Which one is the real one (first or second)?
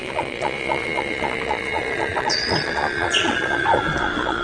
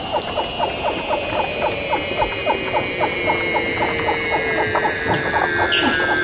second